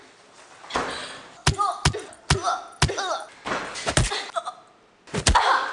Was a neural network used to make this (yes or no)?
no